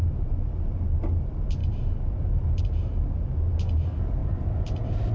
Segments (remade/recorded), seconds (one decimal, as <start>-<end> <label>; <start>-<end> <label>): 0.0-1.6 recorded; 1.6-2.6 remade; 2.6-4.2 recorded; 4.2-5.1 remade